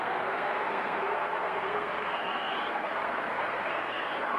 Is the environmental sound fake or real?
fake